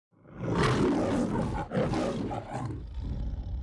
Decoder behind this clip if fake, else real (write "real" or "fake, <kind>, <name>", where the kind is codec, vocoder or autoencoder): real